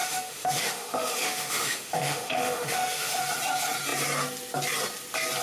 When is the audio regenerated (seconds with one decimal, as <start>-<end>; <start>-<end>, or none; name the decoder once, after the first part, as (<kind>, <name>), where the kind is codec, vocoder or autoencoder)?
0.0-3.2 (autoencoder, DAC-VAE)